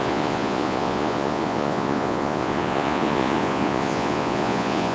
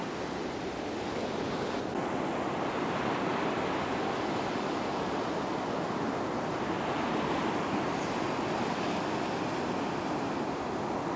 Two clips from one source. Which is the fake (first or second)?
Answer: first